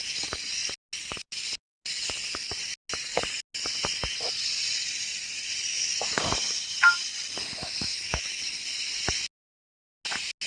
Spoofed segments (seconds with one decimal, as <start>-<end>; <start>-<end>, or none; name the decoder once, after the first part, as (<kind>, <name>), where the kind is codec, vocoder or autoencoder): 5.7-6.2 (autoencoder, DAC-VAE); 7.4-8.4